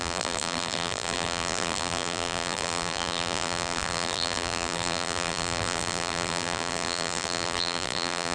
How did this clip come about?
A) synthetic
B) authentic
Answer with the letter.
A